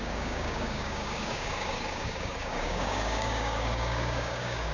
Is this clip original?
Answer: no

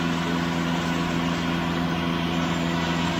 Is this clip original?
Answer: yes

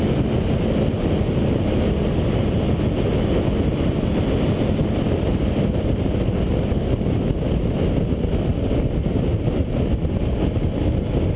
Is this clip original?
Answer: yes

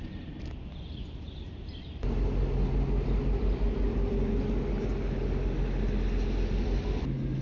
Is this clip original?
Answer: yes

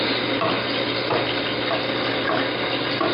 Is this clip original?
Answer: yes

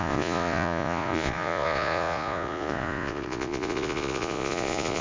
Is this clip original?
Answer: no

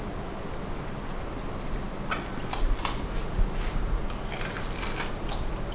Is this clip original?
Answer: yes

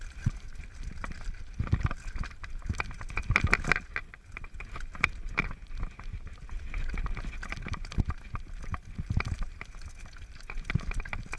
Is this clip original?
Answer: yes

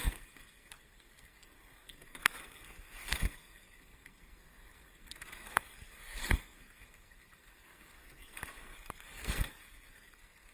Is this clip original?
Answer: no